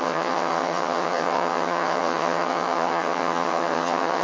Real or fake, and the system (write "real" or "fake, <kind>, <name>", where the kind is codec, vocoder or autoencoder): fake, vocoder, HiFi-GAN